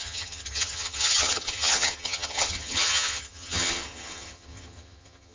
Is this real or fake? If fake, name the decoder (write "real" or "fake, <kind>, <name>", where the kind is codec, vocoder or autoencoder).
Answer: fake, vocoder, HiFi-GAN